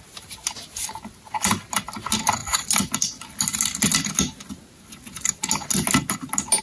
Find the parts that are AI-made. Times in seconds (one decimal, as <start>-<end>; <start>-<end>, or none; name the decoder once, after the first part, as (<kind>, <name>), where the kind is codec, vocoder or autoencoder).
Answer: none